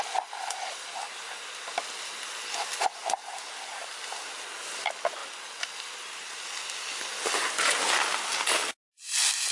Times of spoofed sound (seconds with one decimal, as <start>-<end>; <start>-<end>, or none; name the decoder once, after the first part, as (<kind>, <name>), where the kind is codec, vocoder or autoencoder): none